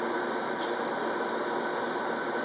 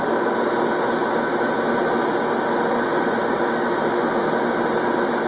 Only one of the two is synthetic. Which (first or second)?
first